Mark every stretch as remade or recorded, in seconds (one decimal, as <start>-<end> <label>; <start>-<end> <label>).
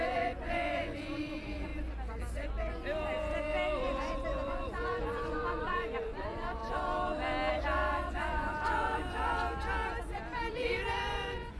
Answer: 0.0-1.7 remade; 1.7-3.8 recorded; 3.8-6.6 remade; 6.6-7.5 recorded; 7.5-9.3 remade; 9.3-10.5 recorded; 10.5-11.6 remade